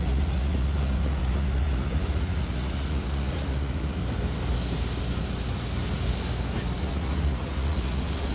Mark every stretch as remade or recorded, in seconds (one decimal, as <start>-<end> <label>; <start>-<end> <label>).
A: 0.0-4.0 remade; 4.0-6.8 recorded; 6.8-8.3 remade